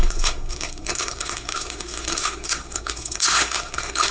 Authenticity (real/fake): fake